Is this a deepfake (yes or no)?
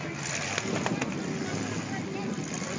no